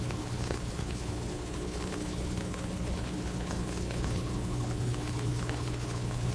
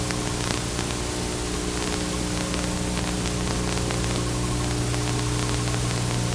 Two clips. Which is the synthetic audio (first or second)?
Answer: first